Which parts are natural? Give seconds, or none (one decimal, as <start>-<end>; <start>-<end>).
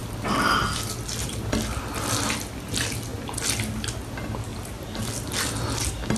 0.0-6.2